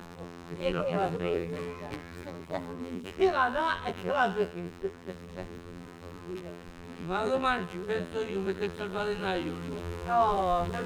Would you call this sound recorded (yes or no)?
no